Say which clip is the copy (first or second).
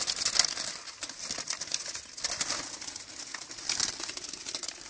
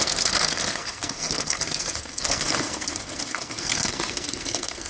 second